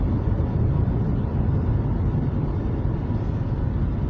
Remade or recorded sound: recorded